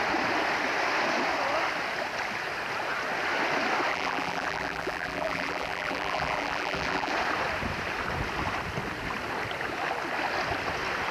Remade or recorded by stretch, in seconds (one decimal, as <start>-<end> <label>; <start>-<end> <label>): 0.0-3.9 recorded; 3.9-7.1 remade; 7.1-11.1 recorded